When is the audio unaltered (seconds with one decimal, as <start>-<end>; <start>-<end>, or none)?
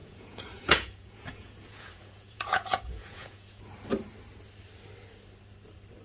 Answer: 3.6-6.0